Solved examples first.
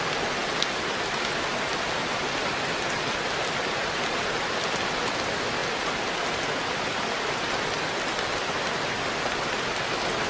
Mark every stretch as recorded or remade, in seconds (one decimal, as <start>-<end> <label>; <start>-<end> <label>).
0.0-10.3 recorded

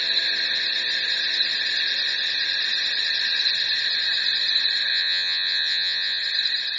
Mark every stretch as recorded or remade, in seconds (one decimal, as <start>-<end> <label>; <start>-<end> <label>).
0.0-4.9 recorded; 4.9-6.2 remade; 6.2-6.8 recorded

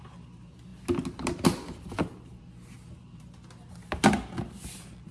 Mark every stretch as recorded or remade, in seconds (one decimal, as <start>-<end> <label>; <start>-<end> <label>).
0.0-5.1 recorded

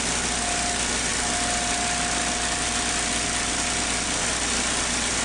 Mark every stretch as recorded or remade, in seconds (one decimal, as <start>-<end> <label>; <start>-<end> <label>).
0.0-5.2 recorded